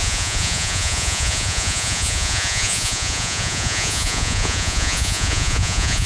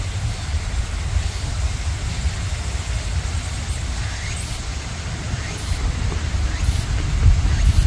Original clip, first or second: second